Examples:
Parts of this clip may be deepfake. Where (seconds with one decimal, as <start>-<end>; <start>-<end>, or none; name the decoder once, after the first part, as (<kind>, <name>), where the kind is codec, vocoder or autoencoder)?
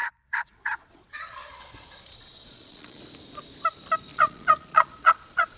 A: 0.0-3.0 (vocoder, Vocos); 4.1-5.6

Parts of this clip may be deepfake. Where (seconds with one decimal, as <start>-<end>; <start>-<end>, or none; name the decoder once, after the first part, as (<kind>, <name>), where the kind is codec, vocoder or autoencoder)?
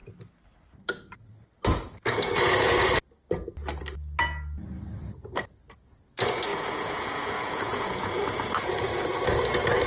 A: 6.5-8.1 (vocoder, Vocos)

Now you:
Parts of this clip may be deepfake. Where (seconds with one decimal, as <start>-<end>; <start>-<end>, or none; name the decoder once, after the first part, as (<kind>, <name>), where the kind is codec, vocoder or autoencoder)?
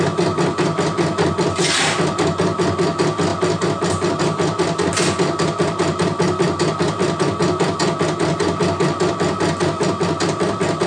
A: none